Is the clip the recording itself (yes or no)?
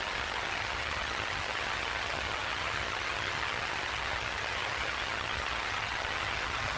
no